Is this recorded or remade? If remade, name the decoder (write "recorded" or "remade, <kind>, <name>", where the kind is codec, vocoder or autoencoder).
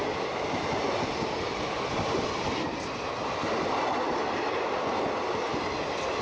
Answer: recorded